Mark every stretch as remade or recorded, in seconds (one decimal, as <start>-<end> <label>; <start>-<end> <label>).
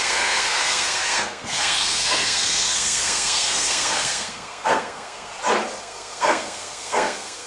0.0-5.3 remade; 5.3-5.8 recorded; 5.8-7.5 remade